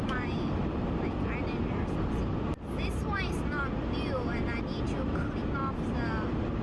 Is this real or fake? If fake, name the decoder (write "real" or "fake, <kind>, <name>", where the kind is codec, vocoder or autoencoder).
real